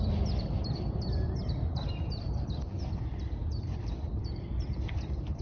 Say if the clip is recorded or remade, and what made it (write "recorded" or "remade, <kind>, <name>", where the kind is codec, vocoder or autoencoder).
remade, vocoder, BigVGAN v2